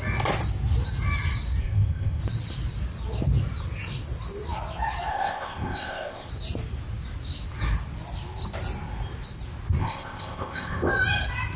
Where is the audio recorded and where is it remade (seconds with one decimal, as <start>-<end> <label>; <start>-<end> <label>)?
0.0-1.6 recorded; 1.6-2.2 remade; 2.2-5.1 recorded; 5.1-6.3 remade; 6.3-9.8 recorded; 9.8-10.9 remade; 10.9-11.6 recorded